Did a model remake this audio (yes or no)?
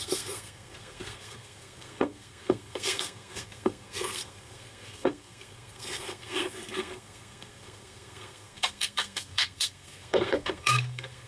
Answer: yes